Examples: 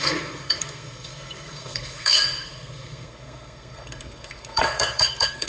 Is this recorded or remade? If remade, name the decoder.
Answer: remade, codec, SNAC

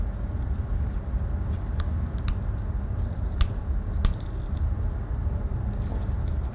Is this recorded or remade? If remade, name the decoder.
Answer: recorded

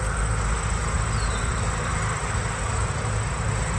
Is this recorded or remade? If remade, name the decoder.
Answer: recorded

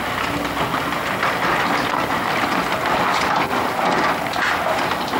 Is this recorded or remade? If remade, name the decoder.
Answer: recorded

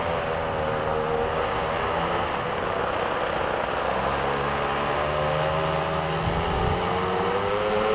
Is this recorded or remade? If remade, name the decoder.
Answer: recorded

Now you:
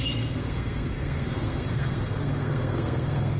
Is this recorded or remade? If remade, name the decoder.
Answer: remade, codec, SNAC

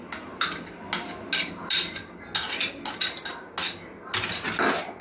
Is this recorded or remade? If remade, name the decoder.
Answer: recorded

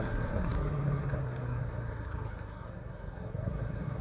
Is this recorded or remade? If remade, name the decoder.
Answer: remade, codec, SNAC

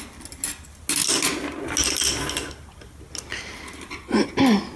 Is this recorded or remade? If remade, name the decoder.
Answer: recorded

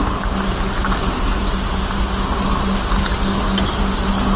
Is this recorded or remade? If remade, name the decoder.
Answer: recorded